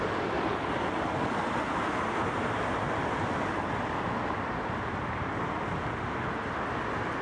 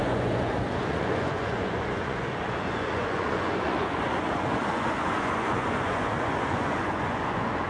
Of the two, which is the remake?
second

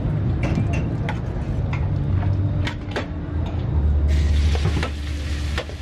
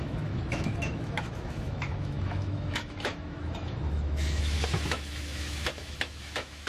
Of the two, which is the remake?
second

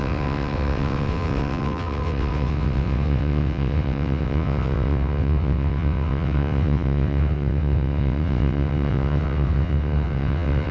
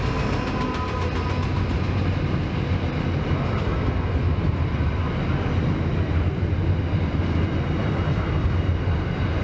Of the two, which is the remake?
first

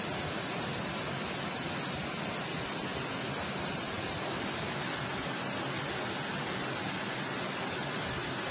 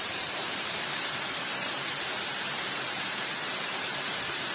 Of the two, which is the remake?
second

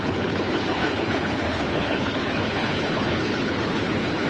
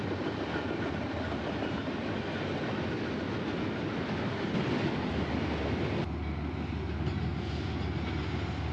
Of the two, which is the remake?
first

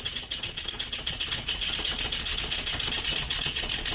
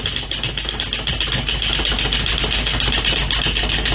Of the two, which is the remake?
first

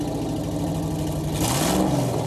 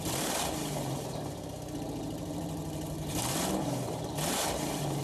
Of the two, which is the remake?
second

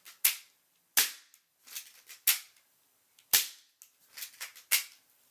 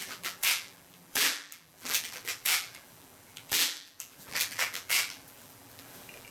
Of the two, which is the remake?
second